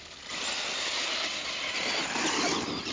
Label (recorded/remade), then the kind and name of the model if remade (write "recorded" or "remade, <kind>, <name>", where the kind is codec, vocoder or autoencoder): remade, vocoder, BigVGAN v2